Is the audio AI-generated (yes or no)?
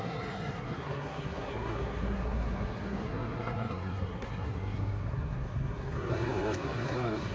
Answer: yes